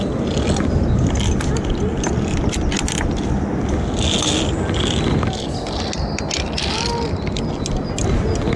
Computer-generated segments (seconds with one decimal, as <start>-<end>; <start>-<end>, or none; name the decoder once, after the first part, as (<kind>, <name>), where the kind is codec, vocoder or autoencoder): none